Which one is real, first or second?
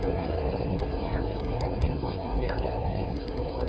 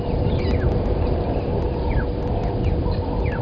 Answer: second